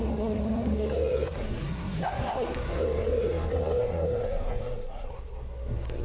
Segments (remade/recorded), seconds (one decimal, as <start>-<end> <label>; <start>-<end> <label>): 0.0-6.0 remade

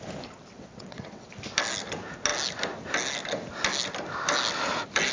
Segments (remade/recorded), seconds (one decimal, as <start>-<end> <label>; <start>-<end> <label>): 0.0-0.5 recorded; 0.5-1.3 remade; 1.3-5.1 recorded

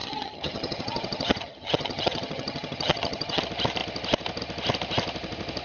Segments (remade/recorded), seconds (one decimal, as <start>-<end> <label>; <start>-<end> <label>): 0.0-3.4 remade; 3.4-5.6 recorded